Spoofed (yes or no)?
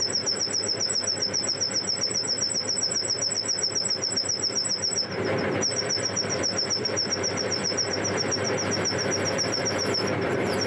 yes